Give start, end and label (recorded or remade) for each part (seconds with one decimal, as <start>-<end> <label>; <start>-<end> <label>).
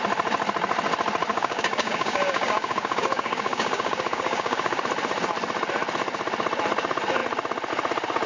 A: 0.0-1.3 recorded; 1.3-4.8 remade; 4.8-8.3 recorded